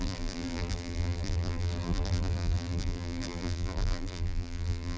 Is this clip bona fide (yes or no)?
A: no